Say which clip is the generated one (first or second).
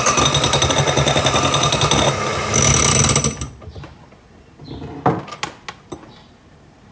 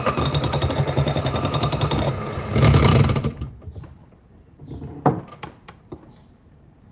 second